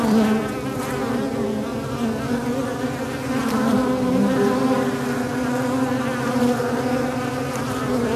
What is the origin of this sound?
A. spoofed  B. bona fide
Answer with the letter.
B